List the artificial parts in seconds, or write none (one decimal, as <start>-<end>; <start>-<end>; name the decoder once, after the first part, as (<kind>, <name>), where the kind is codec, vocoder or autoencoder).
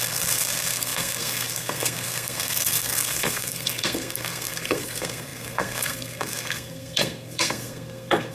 0.0-8.3 (codec, SNAC)